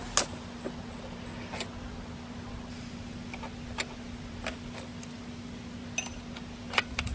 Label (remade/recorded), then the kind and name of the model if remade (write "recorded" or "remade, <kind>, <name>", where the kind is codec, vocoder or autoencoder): recorded